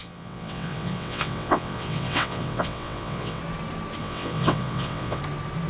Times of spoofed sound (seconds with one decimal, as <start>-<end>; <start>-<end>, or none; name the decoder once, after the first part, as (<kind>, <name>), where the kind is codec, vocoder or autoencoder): 0.0-3.4 (vocoder, WaveNeXt); 4.0-5.2